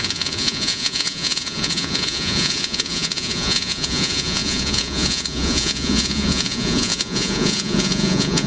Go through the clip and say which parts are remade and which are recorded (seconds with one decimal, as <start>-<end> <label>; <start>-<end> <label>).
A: 0.0-8.5 remade